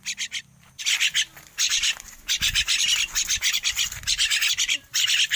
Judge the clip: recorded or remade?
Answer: recorded